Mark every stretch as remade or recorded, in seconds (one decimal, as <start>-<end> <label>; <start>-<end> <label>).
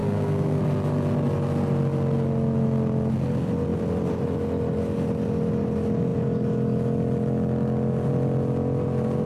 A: 0.0-0.6 remade; 0.6-9.3 recorded